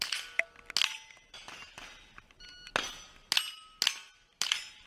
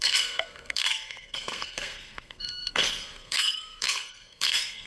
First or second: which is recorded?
first